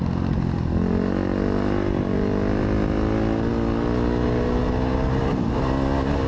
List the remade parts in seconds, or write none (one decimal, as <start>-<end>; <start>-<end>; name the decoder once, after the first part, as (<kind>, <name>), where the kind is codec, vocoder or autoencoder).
none